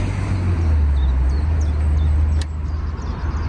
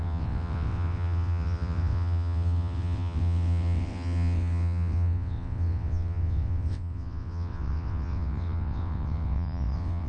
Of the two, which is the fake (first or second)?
second